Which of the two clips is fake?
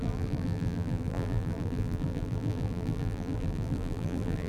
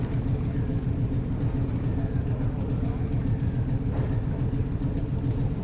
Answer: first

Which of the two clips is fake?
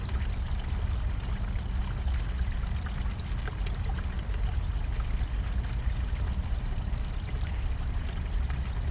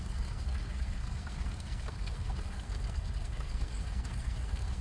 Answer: second